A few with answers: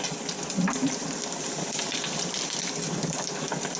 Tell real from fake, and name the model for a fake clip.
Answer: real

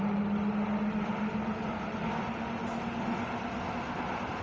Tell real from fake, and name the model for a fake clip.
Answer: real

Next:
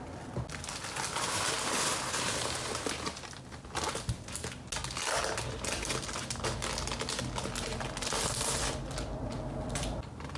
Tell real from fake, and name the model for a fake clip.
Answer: real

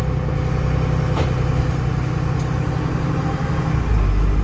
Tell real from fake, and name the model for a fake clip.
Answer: real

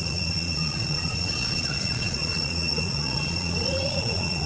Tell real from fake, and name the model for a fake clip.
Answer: fake, vocoder, Vocos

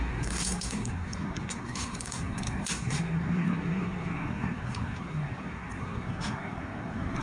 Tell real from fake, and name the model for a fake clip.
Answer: fake, codec, SNAC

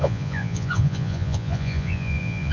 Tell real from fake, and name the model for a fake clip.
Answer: fake, vocoder, Vocos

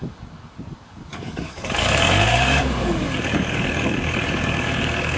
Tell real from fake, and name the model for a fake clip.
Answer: fake, codec, DAC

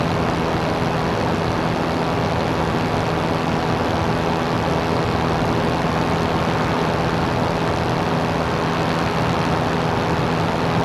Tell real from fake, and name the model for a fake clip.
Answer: real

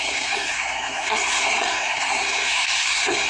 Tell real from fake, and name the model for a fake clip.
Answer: fake, codec, SNAC